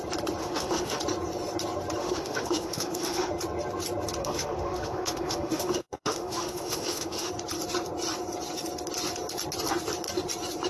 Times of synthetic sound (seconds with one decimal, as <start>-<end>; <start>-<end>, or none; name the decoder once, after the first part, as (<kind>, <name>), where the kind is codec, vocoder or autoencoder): 0.4-1.0 (autoencoder, DAC-VAE); 2.0-3.3; 4.2-7.3